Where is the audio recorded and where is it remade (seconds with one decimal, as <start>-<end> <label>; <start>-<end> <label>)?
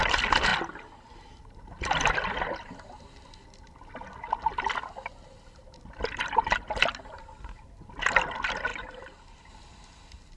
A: 0.0-10.4 recorded